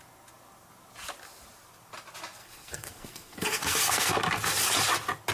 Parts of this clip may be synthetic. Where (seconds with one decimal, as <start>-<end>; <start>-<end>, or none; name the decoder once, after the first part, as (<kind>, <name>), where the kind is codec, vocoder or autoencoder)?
2.4-4.1 (codec, SNAC)